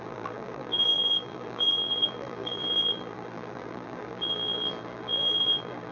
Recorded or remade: remade